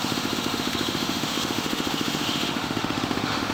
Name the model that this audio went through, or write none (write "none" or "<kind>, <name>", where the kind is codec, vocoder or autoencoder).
autoencoder, DAC-VAE